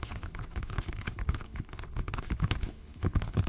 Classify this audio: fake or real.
fake